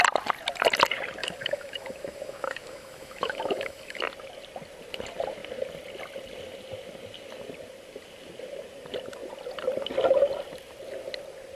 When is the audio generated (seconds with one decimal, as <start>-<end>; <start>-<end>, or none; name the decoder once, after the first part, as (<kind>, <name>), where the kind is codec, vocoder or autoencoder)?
1.2-4.0 (autoencoder, DAC-VAE)